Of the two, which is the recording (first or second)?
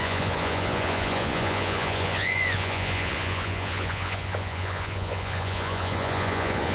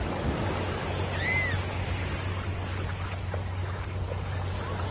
second